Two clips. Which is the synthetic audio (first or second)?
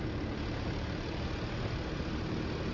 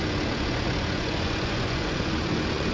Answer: second